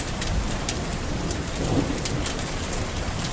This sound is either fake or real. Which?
fake